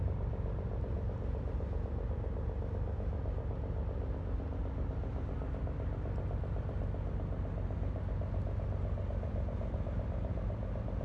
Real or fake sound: real